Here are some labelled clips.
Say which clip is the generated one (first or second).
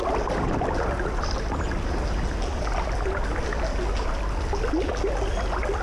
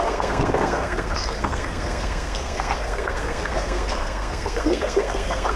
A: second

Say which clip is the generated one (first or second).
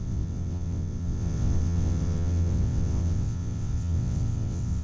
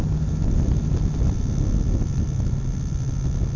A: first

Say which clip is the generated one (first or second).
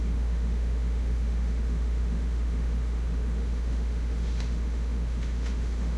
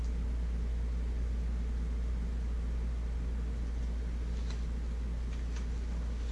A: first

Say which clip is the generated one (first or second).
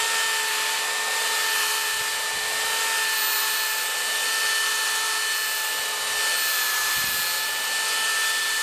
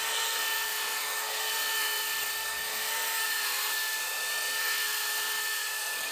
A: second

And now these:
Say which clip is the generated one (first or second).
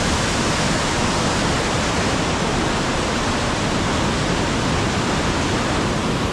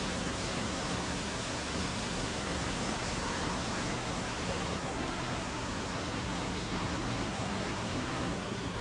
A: second